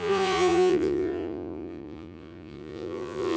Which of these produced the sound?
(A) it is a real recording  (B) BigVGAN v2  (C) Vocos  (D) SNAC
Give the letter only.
C